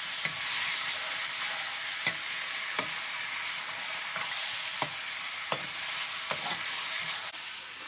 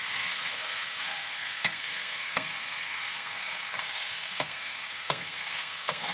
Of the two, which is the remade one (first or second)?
second